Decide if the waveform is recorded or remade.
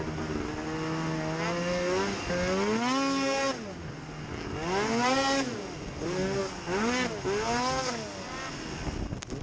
recorded